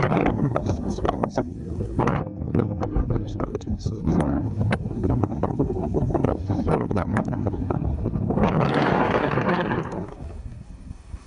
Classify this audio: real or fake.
fake